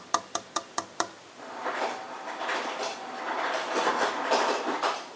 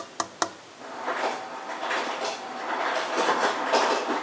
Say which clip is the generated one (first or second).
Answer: first